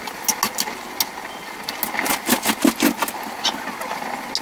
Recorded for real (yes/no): yes